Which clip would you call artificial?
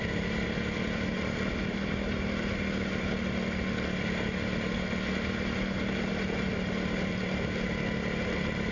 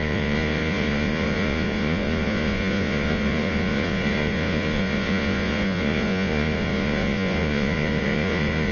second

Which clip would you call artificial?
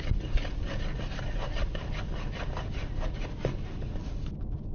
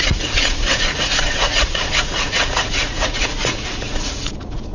second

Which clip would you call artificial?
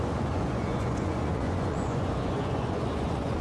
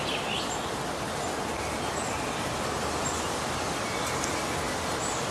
first